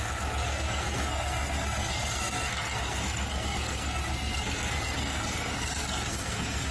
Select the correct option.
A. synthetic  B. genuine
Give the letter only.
A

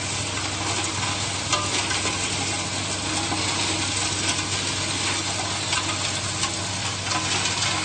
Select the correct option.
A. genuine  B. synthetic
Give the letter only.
A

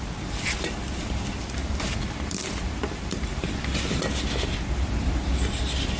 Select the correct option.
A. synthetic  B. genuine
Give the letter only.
A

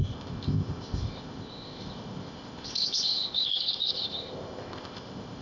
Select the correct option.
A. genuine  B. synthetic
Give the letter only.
B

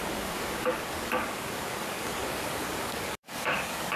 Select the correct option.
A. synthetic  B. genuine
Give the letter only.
A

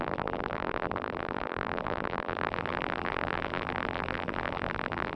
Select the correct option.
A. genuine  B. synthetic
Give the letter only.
B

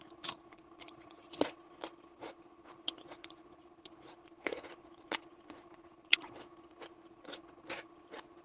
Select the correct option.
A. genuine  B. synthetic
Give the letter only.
B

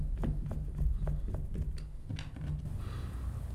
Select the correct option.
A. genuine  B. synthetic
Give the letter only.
A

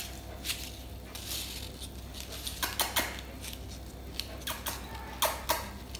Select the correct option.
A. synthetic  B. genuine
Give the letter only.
B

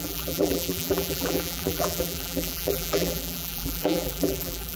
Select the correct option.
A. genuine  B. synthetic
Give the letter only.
B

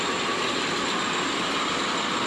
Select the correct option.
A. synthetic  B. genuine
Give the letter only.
B